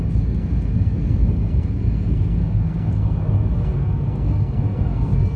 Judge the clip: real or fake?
fake